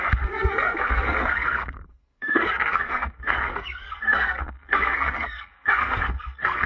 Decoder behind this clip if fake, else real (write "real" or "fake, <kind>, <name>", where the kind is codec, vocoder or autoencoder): fake, codec, SNAC